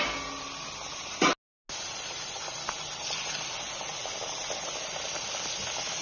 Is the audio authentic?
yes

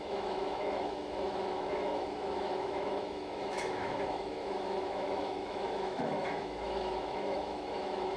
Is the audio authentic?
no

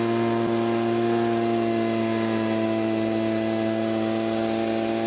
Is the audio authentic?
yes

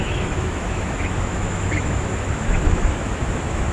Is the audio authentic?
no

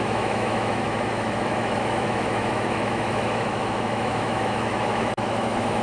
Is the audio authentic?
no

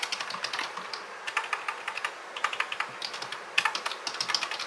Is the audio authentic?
yes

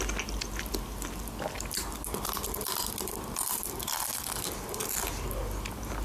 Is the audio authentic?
yes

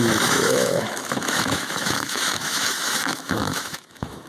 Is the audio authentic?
no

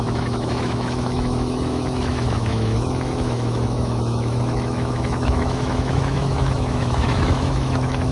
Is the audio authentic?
no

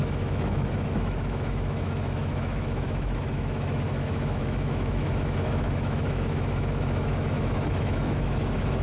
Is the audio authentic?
no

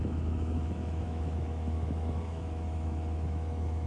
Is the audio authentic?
no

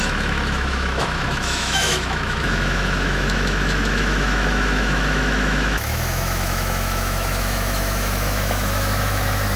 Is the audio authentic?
no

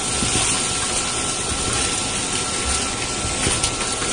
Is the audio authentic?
yes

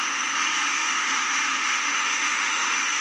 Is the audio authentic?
no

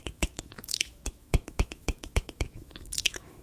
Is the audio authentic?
no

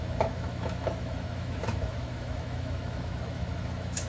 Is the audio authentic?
no